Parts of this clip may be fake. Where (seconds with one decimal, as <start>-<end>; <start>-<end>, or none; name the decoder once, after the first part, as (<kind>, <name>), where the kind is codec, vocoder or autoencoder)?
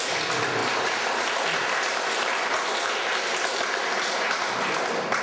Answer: none